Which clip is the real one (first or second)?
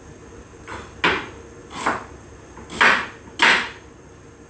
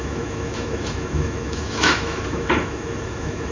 first